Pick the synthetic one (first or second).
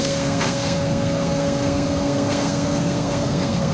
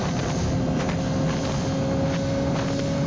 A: first